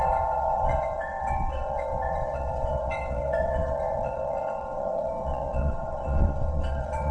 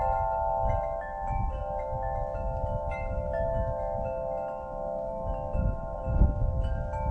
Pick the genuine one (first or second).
second